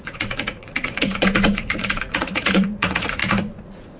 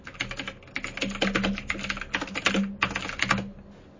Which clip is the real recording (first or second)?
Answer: second